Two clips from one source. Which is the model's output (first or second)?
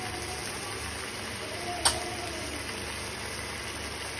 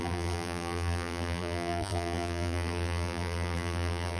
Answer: second